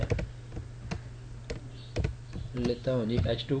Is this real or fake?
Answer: real